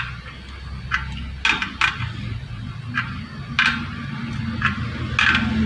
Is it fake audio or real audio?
real